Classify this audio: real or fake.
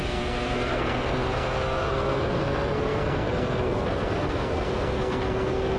fake